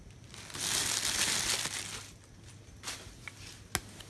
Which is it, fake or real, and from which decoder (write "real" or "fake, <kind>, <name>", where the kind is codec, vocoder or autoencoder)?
real